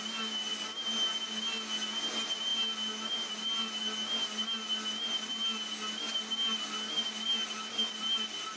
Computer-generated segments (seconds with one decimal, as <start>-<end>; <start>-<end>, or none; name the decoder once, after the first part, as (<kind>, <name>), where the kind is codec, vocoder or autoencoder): none